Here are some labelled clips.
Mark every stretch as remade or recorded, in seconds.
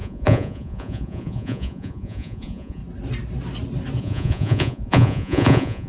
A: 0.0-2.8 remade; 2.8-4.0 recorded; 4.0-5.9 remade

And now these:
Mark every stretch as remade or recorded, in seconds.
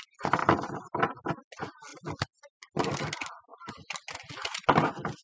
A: 0.0-5.2 recorded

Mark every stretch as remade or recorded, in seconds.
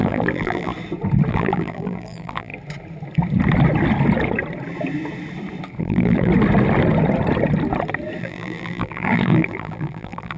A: 0.0-0.7 remade; 0.7-1.3 recorded; 1.3-2.5 remade; 2.5-5.8 recorded; 5.8-6.3 remade; 6.3-8.2 recorded; 8.2-10.4 remade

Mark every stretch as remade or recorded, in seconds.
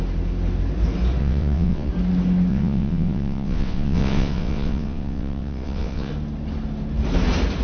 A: 0.0-1.2 recorded; 1.2-1.9 remade; 1.9-2.5 recorded; 2.5-6.1 remade; 6.1-7.6 recorded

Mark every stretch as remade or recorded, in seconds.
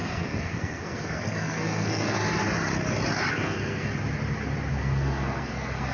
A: 0.0-2.2 remade; 2.2-3.3 recorded; 3.3-3.9 remade; 3.9-4.7 recorded; 4.7-5.9 remade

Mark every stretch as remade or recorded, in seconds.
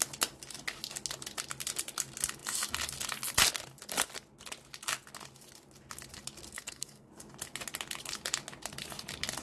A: 0.0-6.5 recorded; 6.5-7.1 remade; 7.1-9.4 recorded